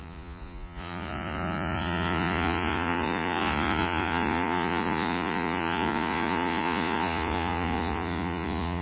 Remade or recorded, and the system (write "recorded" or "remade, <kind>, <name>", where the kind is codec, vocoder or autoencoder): remade, vocoder, Vocos